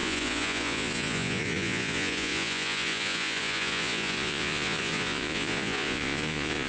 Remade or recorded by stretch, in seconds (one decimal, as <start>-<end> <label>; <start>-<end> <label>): 0.0-6.7 remade

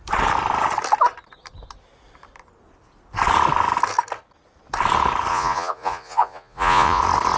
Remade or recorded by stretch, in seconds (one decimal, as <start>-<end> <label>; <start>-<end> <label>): 0.0-5.3 recorded; 5.3-7.0 remade; 7.0-7.4 recorded

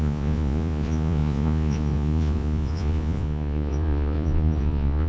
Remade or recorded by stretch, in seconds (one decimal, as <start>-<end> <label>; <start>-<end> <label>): 0.0-5.1 remade